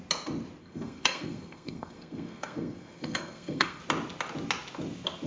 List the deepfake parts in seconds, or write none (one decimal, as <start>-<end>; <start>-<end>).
0.6-3.8

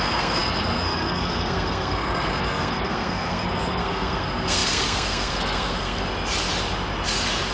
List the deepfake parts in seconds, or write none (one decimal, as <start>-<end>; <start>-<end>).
0.0-6.0

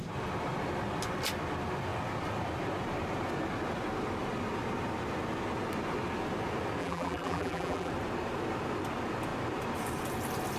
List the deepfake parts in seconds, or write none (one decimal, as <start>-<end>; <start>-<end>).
6.8-7.9

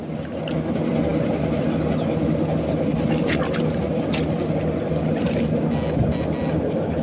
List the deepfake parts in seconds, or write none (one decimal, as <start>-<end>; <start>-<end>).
none

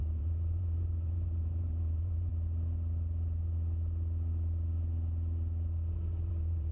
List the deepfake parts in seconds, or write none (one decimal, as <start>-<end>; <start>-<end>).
0.0-2.3; 6.3-6.7

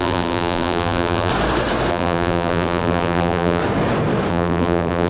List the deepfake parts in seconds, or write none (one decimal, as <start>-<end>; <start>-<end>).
0.0-1.3; 1.9-3.6; 4.3-5.1

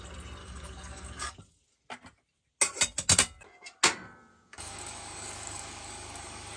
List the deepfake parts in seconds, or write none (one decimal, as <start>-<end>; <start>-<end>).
0.4-1.4; 4.3-6.6